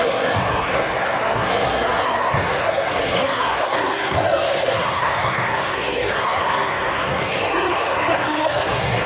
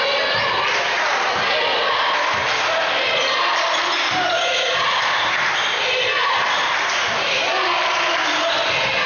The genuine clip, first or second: second